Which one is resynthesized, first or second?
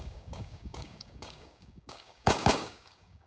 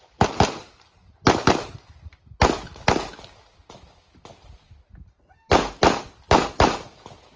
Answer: first